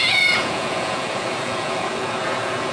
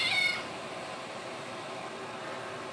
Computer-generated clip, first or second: first